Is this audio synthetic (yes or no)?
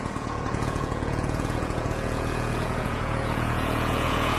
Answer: yes